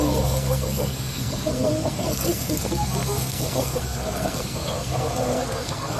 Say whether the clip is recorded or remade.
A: remade